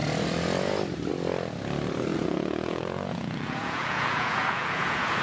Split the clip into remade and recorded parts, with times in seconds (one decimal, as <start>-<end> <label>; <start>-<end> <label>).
0.0-2.1 recorded; 2.1-5.2 remade